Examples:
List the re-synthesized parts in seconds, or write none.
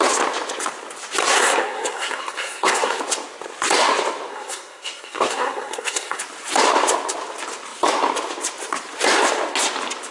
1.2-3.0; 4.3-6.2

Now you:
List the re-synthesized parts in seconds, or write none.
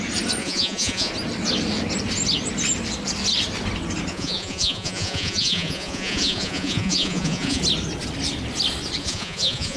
0.4-1.1; 4.1-7.6; 9.0-9.8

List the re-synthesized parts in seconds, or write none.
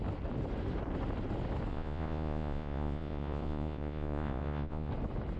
1.7-4.9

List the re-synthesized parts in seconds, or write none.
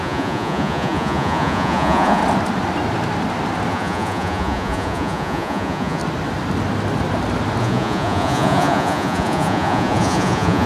0.0-2.2; 3.7-6.0; 7.6-10.7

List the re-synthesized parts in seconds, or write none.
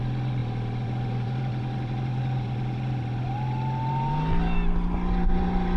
none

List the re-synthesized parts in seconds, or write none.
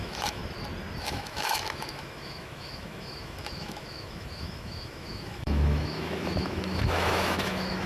0.0-0.4; 1.0-7.9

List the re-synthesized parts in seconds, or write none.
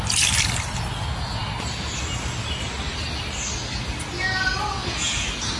none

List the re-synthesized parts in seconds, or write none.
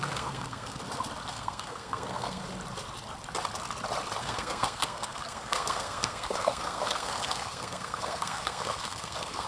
0.0-0.8; 1.3-2.4; 4.2-9.5